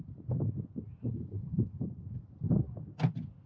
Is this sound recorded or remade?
recorded